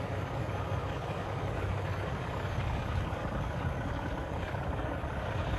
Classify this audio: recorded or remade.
remade